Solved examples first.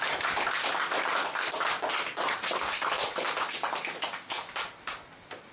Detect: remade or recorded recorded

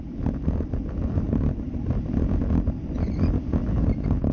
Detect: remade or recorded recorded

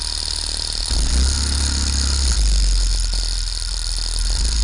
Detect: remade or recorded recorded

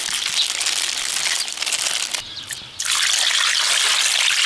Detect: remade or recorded recorded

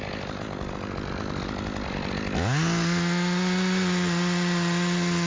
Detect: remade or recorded recorded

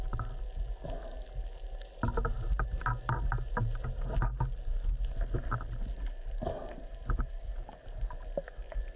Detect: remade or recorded recorded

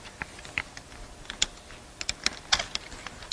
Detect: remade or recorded recorded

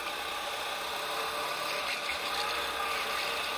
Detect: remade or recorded recorded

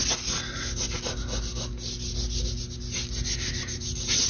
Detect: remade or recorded recorded